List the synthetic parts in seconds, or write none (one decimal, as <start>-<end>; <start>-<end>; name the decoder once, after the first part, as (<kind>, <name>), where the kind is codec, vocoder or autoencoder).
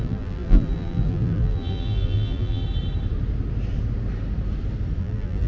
0.0-2.6 (vocoder, BigVGAN v2); 5.0-5.5